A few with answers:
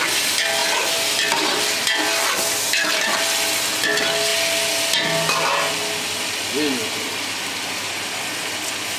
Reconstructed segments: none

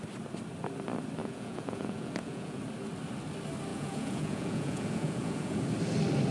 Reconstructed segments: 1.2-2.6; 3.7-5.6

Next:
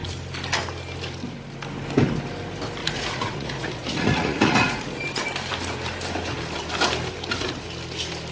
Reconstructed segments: 2.8-5.0

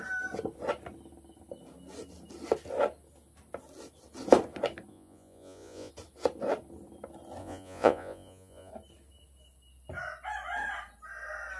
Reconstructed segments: 4.9-5.9; 7.4-8.7